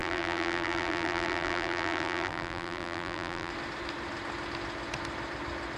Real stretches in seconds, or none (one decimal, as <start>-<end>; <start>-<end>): 3.5-5.8